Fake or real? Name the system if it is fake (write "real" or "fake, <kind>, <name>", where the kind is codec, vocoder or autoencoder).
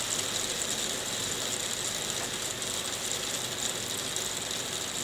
real